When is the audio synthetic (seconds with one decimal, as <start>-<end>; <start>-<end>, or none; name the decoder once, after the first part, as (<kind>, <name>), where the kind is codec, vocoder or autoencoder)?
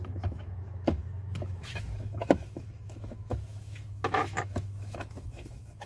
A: 0.0-5.9 (autoencoder, DAC-VAE)